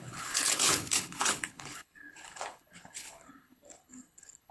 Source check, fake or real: fake